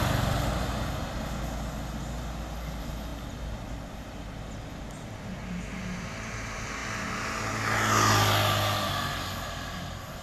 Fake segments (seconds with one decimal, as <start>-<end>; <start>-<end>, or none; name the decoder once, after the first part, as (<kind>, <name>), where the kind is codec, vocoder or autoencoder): none

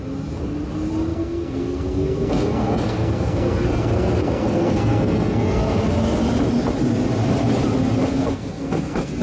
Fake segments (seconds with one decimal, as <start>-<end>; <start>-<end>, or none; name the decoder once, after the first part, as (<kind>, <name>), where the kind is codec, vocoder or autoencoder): 1.1-5.8 (codec, SNAC); 8.0-9.2

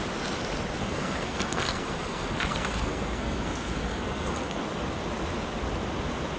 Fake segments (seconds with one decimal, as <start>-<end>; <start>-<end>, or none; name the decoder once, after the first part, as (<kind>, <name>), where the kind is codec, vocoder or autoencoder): 0.8-4.6 (codec, SNAC)

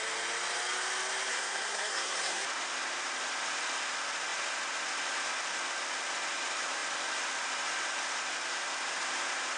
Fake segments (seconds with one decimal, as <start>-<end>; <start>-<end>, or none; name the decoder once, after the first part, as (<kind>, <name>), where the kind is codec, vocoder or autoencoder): 1.3-2.4 (codec, SNAC)

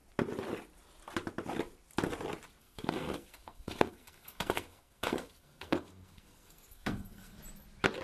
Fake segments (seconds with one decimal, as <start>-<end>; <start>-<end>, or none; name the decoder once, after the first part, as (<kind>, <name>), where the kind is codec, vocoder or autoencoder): 2.6-7.4 (codec, SNAC)

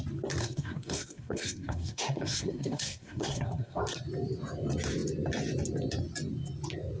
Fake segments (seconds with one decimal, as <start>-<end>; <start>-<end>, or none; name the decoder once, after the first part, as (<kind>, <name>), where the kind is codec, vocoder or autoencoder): 0.4-3.8 (codec, SNAC)

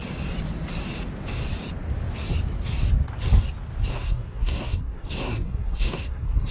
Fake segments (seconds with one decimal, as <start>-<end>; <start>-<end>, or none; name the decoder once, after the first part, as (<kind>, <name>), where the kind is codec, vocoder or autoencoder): 3.9-6.5 (codec, SNAC)

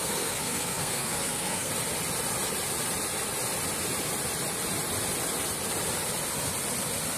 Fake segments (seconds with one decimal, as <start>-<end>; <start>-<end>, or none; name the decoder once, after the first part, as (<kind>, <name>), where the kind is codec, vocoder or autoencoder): 0.0-1.7 (codec, SNAC)